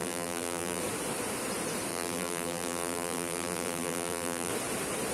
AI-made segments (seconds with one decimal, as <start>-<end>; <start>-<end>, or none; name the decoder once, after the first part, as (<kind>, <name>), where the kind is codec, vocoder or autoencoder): 0.0-0.8 (vocoder, BigVGAN v2); 1.9-4.5